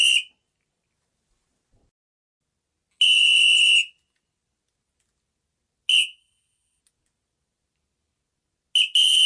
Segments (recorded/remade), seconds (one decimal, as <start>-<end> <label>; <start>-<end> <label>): 0.0-5.9 recorded; 5.9-6.8 remade; 6.8-9.3 recorded